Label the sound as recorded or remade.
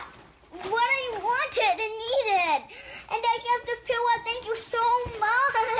recorded